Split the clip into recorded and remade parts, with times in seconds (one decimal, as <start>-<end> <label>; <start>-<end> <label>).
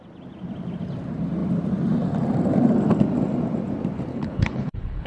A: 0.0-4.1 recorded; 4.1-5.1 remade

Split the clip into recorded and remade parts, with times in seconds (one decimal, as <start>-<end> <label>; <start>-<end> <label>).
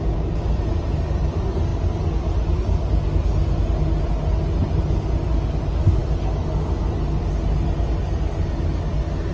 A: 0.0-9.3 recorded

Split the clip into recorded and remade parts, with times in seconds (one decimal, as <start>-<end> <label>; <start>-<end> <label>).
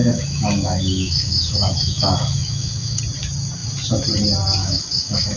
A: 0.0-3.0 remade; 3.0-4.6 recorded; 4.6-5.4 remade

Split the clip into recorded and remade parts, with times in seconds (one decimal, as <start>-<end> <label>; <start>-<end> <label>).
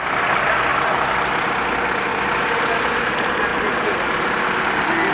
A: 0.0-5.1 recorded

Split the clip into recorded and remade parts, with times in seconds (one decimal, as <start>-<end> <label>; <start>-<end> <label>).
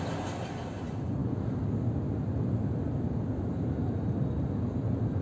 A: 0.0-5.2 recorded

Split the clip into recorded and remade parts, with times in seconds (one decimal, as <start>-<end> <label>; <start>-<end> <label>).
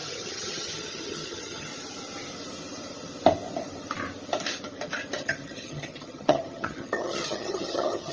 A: 0.0-1.7 remade; 1.7-5.2 recorded; 5.2-8.1 remade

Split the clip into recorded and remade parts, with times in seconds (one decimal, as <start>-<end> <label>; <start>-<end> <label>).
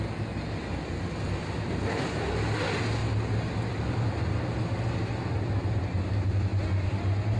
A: 0.0-7.4 recorded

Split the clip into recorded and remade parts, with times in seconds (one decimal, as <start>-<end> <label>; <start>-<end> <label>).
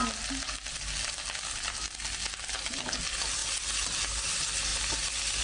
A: 0.0-5.4 recorded